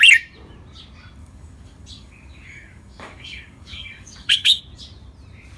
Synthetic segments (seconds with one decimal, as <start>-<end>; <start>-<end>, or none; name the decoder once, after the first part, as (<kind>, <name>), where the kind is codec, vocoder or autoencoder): 1.2-4.6 (codec, DAC)